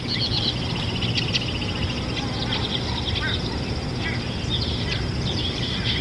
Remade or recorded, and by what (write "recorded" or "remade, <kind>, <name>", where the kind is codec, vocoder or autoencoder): recorded